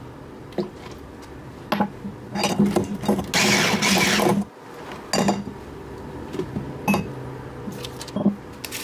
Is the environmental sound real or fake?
real